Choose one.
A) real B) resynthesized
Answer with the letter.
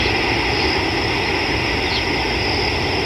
A